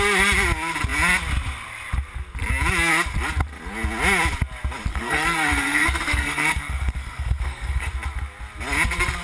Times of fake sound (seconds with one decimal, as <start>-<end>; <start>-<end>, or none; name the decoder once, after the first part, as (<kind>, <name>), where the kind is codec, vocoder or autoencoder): 4.9-7.9 (codec, SNAC)